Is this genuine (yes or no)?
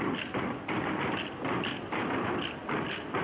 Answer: yes